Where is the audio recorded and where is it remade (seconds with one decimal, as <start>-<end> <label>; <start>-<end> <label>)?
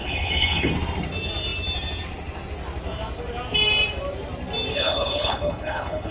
0.0-0.7 remade; 0.7-4.7 recorded; 4.7-6.1 remade